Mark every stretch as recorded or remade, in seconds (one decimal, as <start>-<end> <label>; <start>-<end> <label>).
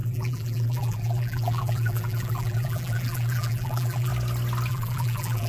0.0-4.1 remade; 4.1-4.7 recorded; 4.7-5.5 remade